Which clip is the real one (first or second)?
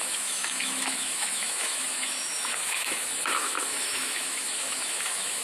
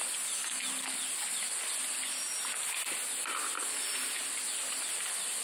second